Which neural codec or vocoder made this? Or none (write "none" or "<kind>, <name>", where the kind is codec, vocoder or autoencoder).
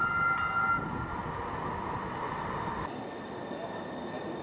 none